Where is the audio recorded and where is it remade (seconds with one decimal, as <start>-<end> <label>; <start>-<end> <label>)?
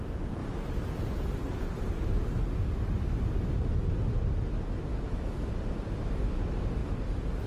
0.0-4.9 recorded; 4.9-5.5 remade; 5.5-7.5 recorded